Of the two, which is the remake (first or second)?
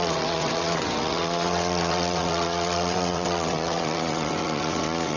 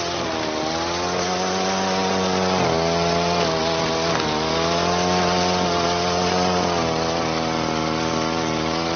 first